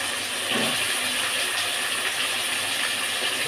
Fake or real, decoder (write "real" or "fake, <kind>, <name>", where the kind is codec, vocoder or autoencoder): real